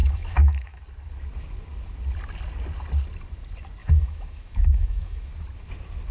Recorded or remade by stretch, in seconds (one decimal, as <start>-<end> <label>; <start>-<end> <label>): 0.0-0.8 remade; 0.8-3.8 recorded; 3.8-5.3 remade; 5.3-6.1 recorded